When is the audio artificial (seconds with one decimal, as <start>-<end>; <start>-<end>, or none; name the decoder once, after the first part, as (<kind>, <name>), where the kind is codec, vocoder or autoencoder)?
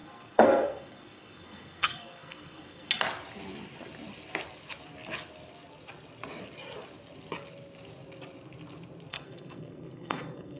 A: 0.0-2.9 (codec, SNAC); 9.1-10.6